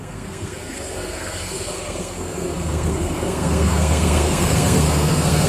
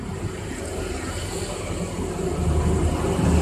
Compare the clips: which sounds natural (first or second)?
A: second